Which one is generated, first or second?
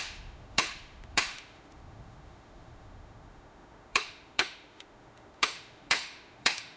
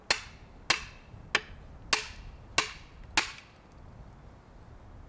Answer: first